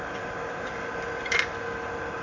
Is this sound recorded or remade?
recorded